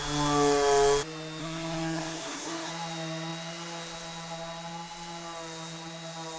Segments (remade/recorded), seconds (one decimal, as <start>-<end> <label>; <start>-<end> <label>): 0.0-1.4 recorded; 1.4-2.7 remade; 2.7-6.4 recorded